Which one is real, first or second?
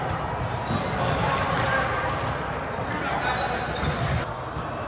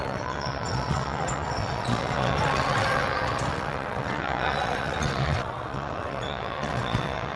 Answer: first